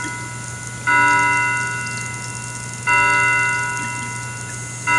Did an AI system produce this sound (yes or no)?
no